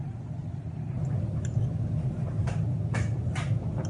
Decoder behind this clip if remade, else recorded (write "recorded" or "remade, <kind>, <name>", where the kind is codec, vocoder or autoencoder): recorded